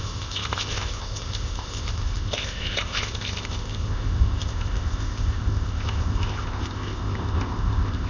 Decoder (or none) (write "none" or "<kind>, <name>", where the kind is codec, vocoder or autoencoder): codec, ZipCodec